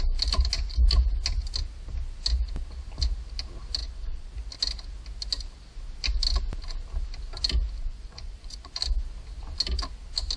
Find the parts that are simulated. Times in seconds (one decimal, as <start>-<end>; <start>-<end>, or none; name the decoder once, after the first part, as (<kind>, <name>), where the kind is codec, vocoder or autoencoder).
3.8-4.4 (vocoder, Vocos); 7.8-8.8